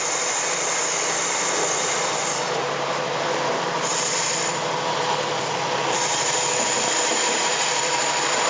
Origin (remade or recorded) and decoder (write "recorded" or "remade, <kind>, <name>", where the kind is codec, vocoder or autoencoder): remade, vocoder, BigVGAN v2